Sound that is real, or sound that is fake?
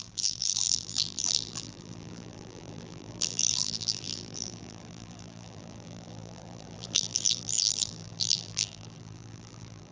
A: fake